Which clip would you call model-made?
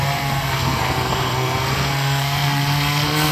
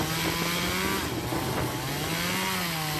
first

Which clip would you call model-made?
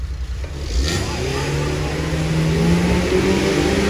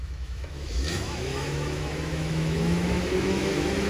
second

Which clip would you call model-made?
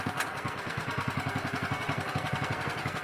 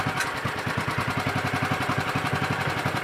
first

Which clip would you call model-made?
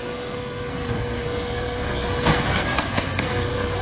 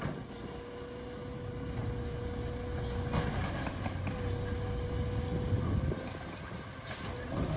first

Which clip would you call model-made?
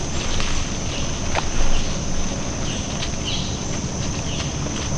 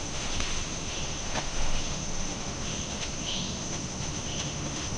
second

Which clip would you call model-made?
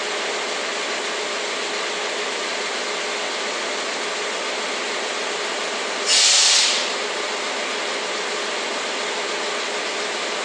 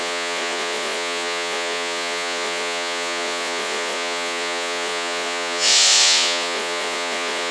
second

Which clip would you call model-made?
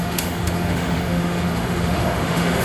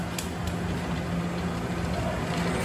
first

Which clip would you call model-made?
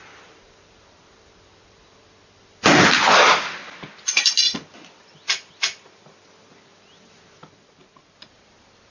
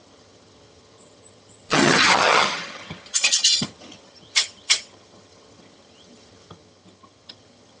second